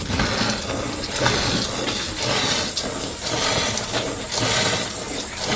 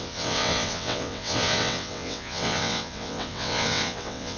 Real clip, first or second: first